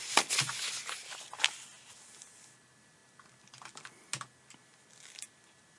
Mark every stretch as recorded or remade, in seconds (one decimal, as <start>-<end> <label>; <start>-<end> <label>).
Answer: 0.0-5.8 recorded